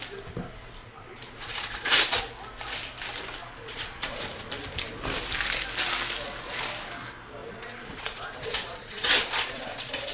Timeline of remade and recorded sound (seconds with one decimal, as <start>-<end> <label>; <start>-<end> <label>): 0.0-0.8 recorded; 0.8-2.2 remade; 2.2-3.4 recorded; 3.4-4.2 remade; 4.2-7.4 recorded; 7.4-10.1 remade